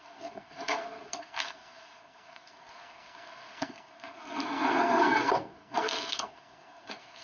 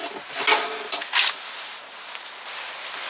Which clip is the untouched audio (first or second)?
second